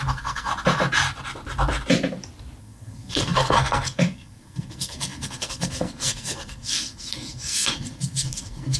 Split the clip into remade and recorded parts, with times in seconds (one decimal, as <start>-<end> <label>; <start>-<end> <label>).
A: 0.0-0.5 remade; 0.5-2.6 recorded; 2.6-8.8 remade